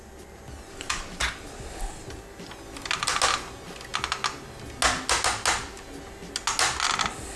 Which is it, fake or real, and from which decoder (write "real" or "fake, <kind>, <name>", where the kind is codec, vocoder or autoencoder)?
real